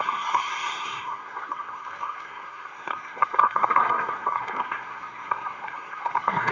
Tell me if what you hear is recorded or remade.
remade